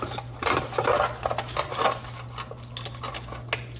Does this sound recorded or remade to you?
recorded